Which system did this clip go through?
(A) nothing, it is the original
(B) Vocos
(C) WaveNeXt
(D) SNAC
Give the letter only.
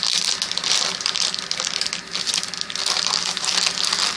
A